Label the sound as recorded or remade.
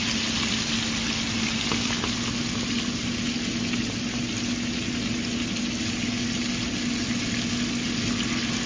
recorded